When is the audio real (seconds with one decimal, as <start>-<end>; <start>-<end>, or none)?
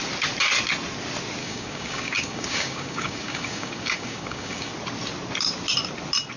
0.0-1.4; 4.7-6.4